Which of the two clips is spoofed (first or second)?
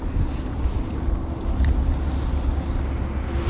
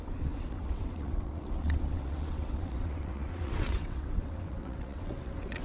second